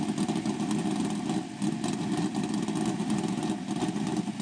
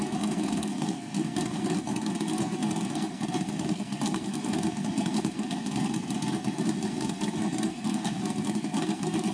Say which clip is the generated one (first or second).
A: second